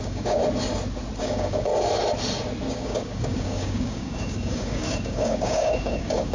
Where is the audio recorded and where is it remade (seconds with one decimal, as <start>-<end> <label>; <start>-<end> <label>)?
0.0-0.4 remade; 0.4-1.2 recorded; 1.2-1.7 remade; 1.7-2.7 recorded; 2.7-6.3 remade